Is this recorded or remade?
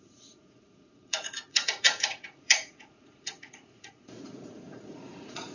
remade